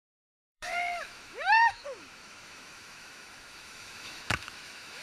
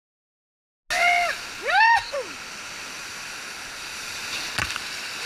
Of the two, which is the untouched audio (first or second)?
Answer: second